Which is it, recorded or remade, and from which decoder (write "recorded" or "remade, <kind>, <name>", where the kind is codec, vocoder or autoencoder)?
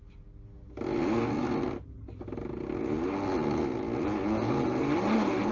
recorded